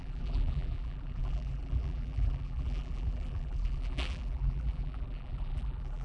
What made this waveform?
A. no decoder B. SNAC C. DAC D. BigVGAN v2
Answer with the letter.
D